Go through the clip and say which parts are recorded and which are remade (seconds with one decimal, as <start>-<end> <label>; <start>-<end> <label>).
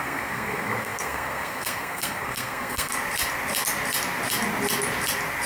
0.0-2.9 remade; 2.9-5.5 recorded